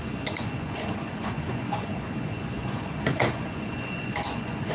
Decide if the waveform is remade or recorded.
remade